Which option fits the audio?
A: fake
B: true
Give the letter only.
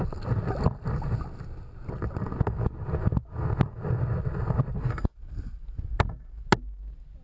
B